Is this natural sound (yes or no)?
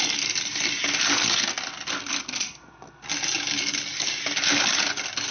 yes